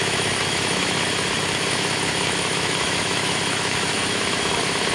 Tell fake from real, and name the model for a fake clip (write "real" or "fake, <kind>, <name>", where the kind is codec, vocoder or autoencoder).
fake, autoencoder, DAC-VAE